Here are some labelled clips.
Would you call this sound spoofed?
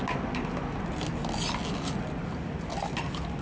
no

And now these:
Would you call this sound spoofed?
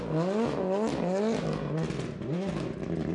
no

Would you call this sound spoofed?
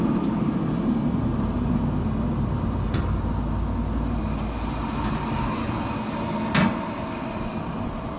no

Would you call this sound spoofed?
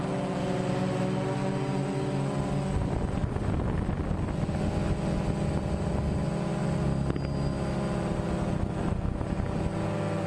no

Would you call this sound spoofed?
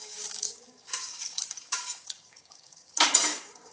yes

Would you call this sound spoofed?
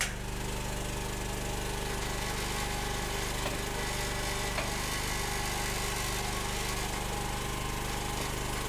no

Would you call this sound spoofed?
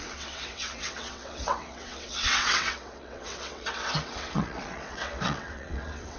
yes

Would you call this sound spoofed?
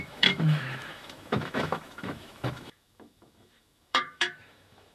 yes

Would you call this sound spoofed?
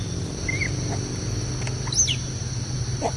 no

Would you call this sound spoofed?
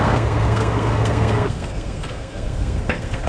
yes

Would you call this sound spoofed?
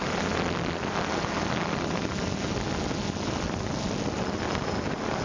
no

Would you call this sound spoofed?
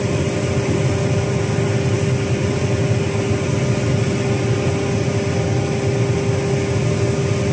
no